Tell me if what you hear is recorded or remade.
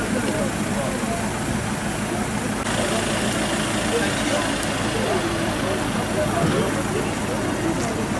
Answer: recorded